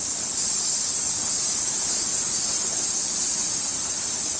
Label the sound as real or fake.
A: real